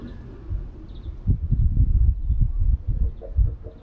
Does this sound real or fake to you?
real